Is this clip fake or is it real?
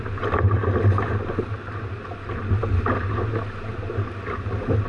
real